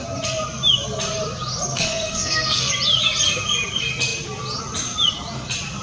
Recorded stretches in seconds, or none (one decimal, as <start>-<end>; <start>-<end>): 0.0-1.7; 2.7-5.8